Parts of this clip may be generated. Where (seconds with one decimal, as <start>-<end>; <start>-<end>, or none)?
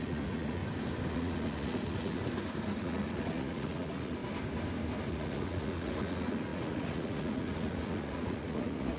0.0-0.6; 1.1-2.2; 2.8-4.2; 5.1-9.0